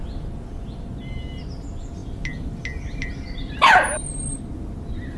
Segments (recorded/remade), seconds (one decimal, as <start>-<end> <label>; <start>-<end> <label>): 0.0-5.2 recorded